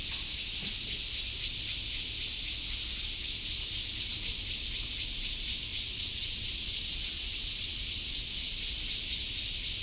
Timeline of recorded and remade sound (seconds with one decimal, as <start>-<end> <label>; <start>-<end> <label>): 0.0-5.7 recorded; 5.7-8.6 remade; 8.6-9.8 recorded